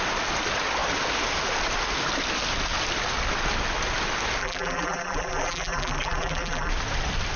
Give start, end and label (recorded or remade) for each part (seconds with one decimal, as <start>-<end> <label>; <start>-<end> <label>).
0.0-4.4 recorded; 4.4-6.7 remade; 6.7-7.4 recorded